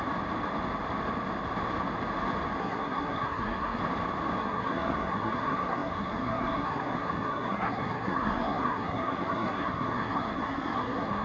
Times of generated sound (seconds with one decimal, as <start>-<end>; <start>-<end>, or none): 2.6-3.8; 4.4-11.2